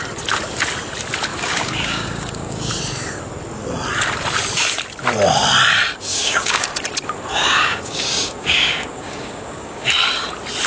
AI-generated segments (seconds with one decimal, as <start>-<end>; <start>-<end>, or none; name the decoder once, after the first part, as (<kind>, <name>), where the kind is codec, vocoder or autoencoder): 1.3-2.7 (codec, DAC); 6.1-6.8; 7.3-9.9